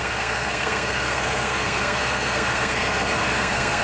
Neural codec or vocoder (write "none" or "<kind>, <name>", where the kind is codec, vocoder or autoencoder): codec, SNAC